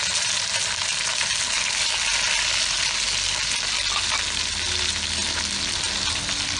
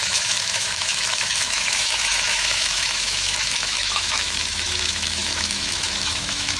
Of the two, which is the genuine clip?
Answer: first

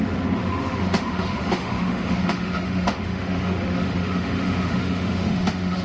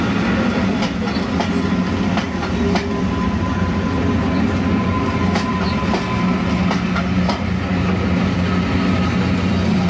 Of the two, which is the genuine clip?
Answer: second